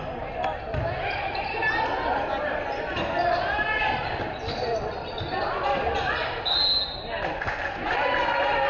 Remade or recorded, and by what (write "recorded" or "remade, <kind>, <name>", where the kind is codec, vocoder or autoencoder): recorded